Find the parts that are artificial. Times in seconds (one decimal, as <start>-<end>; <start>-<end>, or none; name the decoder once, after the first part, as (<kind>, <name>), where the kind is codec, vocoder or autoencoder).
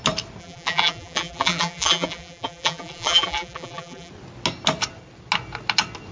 0.4-4.1 (vocoder, BigVGAN v2)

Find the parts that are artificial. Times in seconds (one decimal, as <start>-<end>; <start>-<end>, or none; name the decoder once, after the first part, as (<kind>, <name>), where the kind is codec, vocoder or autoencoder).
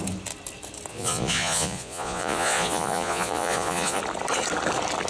0.9-4.0 (vocoder, Vocos)